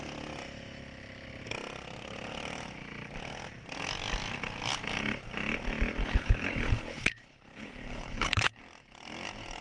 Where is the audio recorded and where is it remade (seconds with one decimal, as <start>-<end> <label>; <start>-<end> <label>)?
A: 0.0-6.0 recorded; 6.0-8.6 remade; 8.6-9.6 recorded